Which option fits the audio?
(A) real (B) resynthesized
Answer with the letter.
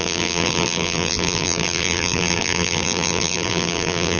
B